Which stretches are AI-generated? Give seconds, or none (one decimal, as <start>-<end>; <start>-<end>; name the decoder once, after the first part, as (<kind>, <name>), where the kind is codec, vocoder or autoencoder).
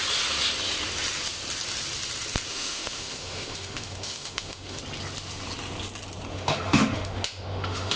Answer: 2.5-4.8 (autoencoder, DAC-VAE); 6.3-8.0